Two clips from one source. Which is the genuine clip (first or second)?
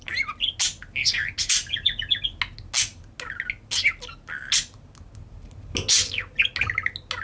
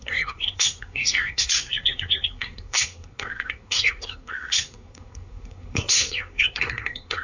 first